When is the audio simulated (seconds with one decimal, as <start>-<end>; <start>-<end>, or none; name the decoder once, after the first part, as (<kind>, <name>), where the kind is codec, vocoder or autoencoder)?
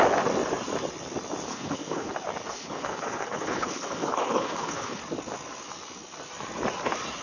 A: 1.5-2.1 (codec, HILCodec); 2.5-5.0